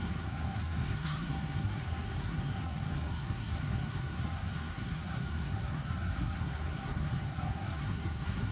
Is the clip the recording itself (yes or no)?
no